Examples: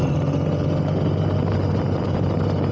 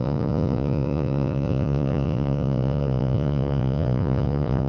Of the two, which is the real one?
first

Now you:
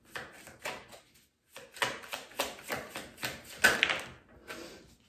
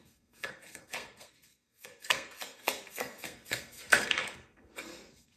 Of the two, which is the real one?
first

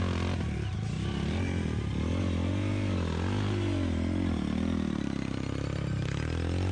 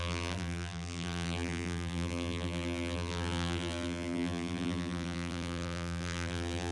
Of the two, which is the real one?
first